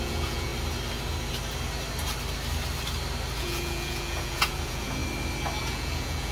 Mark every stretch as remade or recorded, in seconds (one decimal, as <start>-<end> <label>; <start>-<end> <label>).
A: 0.0-0.5 remade; 0.5-3.4 recorded; 3.4-5.0 remade; 5.0-5.6 recorded; 5.6-6.3 remade